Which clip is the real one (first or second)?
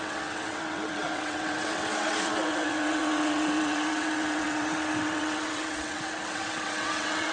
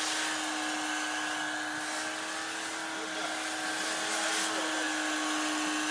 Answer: second